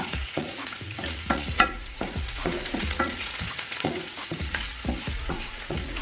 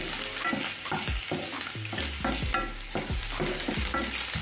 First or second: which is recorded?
second